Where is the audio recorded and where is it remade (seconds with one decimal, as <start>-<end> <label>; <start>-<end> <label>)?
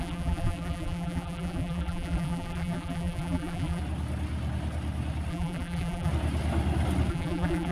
0.0-3.8 remade; 3.8-5.3 recorded; 5.3-6.1 remade; 6.1-7.1 recorded; 7.1-7.7 remade